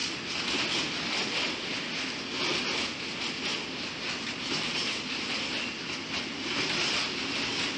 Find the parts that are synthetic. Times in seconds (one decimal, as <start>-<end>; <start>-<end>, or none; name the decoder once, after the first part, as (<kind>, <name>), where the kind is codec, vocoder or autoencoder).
none